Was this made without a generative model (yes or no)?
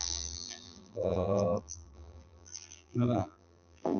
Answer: no